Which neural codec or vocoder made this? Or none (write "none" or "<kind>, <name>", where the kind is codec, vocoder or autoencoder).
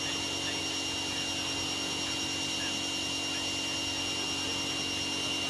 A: none